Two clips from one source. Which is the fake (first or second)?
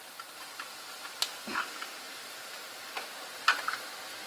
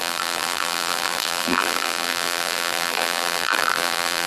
second